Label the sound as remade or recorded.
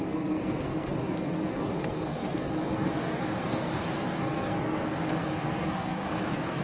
remade